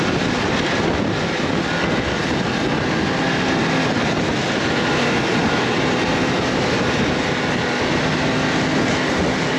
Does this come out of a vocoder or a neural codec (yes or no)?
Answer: no